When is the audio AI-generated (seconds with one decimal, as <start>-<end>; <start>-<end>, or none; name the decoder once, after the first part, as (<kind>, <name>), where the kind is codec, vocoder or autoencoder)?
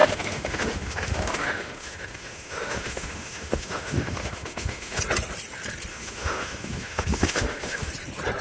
0.0-5.0 (autoencoder, DAC-VAE); 5.9-7.9